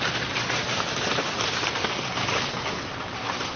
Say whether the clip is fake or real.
fake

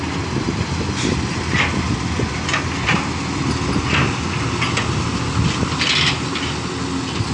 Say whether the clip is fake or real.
real